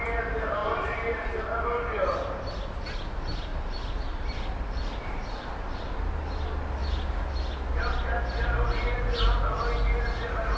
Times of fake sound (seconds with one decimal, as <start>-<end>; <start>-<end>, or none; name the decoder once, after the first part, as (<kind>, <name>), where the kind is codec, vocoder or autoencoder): 0.6-1.4 (vocoder, BigVGAN v2); 3.5-5.8